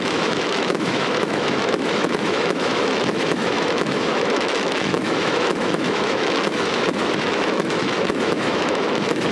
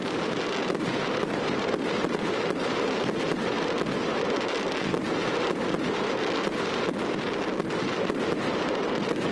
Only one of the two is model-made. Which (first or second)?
first